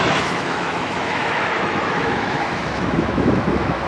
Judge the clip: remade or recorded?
remade